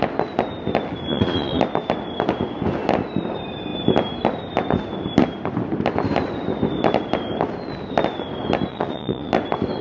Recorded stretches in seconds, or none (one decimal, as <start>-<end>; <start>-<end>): 0.0-1.1; 1.6-8.7; 9.3-9.8